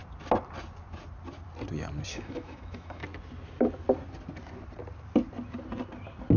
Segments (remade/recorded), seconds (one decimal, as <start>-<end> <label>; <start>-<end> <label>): 0.0-2.1 recorded; 2.1-3.0 remade; 3.0-6.4 recorded